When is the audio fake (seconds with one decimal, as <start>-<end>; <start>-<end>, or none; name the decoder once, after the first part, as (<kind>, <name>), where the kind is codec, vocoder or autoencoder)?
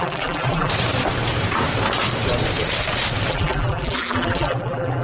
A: 0.0-0.7 (vocoder, BigVGAN v2); 3.3-5.0